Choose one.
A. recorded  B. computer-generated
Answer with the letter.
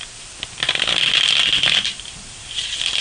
A